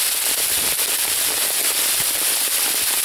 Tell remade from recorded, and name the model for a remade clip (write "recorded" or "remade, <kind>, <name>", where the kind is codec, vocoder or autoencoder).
recorded